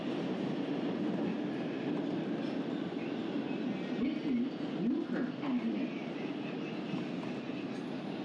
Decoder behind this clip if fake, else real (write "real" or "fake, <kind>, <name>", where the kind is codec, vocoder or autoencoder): real